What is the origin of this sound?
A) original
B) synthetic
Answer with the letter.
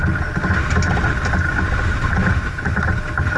A